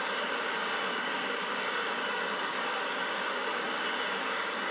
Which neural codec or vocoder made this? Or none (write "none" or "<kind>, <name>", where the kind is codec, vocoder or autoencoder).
codec, DAC